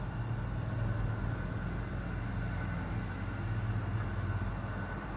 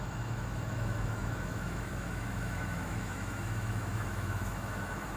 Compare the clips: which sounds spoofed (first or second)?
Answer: second